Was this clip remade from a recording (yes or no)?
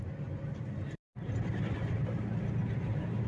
no